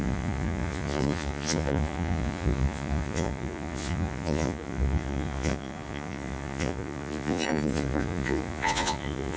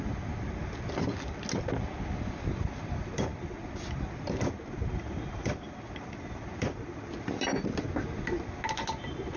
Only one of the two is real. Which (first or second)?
second